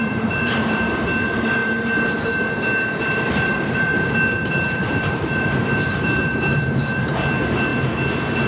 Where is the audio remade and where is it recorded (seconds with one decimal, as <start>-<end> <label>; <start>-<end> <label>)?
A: 0.0-3.9 remade; 3.9-4.5 recorded; 4.5-7.7 remade; 7.7-8.5 recorded